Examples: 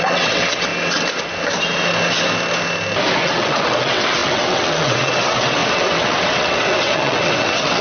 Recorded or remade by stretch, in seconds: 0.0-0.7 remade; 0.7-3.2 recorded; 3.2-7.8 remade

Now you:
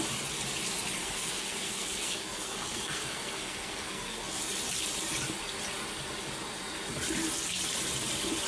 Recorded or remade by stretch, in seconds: 0.0-1.0 recorded; 1.0-4.4 remade; 4.4-8.5 recorded

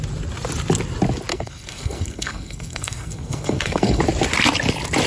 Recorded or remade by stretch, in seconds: 0.0-1.3 recorded; 1.3-4.0 remade; 4.0-5.1 recorded

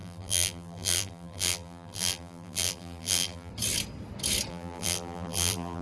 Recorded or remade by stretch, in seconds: 0.0-3.5 remade; 3.5-4.5 recorded; 4.5-5.8 remade

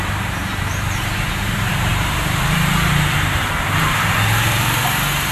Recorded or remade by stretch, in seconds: 0.0-5.3 remade